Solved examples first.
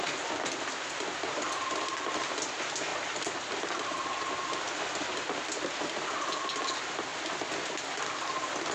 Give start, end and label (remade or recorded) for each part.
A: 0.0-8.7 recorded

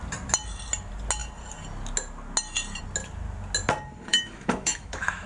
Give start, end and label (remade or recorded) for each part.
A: 0.0-4.1 recorded; 4.1-5.3 remade

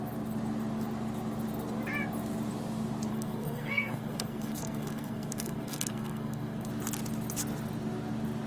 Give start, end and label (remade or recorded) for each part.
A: 0.0-3.1 recorded; 3.1-6.7 remade; 6.7-8.5 recorded